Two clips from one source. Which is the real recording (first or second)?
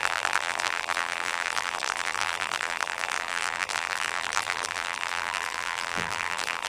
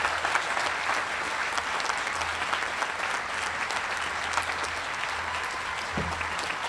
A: second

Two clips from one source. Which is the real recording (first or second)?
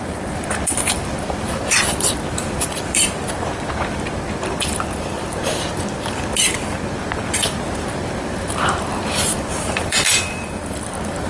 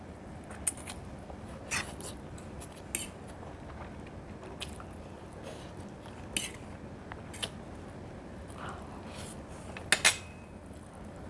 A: second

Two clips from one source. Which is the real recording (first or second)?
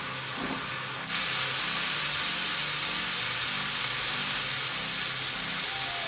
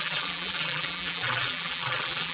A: first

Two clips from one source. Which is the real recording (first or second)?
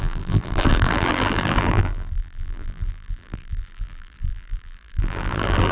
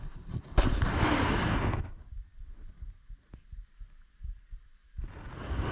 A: second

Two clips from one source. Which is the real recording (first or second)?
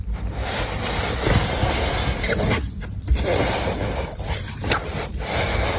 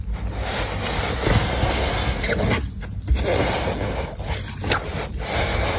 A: second